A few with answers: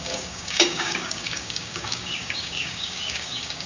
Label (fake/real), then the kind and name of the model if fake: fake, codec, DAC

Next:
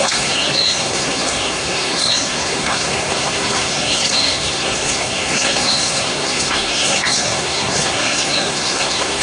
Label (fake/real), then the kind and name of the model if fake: fake, codec, SNAC